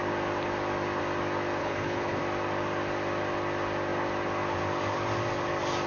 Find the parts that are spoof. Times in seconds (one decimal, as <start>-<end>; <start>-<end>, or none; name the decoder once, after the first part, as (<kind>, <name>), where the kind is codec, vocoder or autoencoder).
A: 1.6-2.2 (codec, HILCodec)